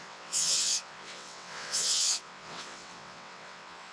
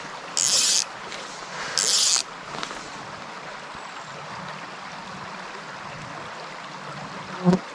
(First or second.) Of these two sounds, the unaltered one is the second